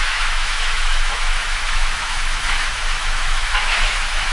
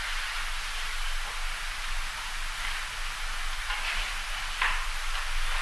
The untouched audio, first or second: second